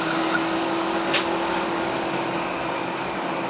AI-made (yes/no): yes